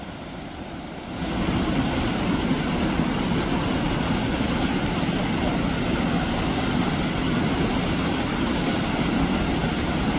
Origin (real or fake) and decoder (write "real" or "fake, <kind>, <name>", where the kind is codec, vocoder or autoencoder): real